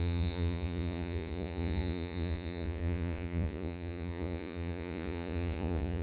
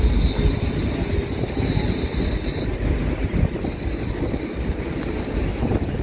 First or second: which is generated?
first